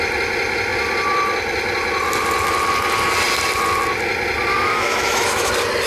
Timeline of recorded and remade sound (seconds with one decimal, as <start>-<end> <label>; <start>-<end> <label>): 0.0-4.5 recorded; 4.5-5.5 remade; 5.5-5.9 recorded